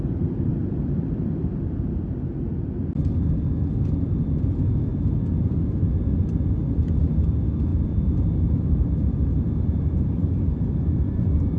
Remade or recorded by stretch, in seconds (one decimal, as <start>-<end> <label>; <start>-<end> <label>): 0.0-0.5 recorded; 0.5-2.1 remade; 2.1-4.9 recorded; 4.9-6.8 remade; 6.8-7.7 recorded; 7.7-11.6 remade